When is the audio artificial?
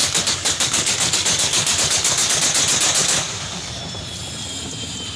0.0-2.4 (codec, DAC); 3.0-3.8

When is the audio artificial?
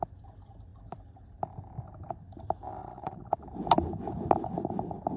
2.8-3.4 (vocoder, Vocos)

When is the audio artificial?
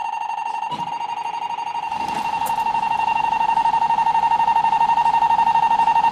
0.0-0.9 (vocoder, BigVGAN v2); 1.9-5.6